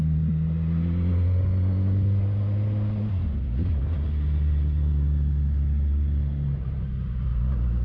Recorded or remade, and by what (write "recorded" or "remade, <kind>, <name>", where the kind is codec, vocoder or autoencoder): recorded